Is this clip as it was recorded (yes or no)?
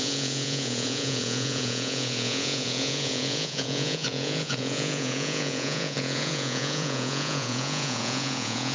no